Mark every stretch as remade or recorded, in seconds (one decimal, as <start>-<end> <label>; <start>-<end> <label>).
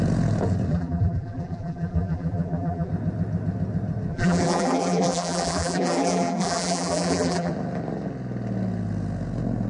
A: 0.0-0.7 recorded; 0.7-2.9 remade; 2.9-4.1 recorded; 4.1-7.5 remade; 7.5-9.7 recorded